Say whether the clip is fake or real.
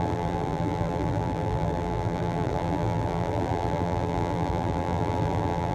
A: fake